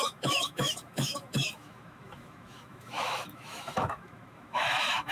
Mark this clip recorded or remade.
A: remade